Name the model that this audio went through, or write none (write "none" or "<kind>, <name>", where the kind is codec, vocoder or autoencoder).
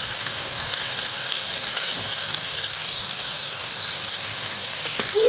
codec, DAC